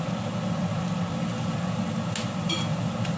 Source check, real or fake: real